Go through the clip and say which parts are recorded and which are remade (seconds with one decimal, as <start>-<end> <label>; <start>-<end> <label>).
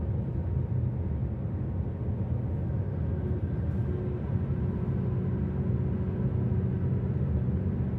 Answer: 0.0-8.0 recorded